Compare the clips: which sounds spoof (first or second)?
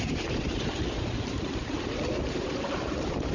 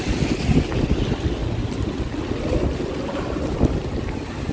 first